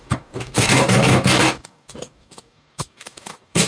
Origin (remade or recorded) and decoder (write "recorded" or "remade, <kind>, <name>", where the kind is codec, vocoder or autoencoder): remade, codec, DAC